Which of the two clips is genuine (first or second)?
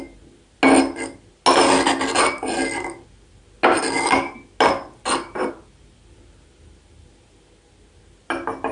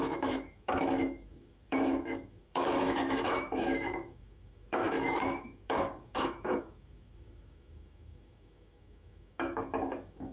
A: first